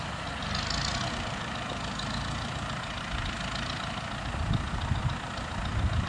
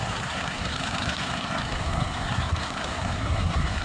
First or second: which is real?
first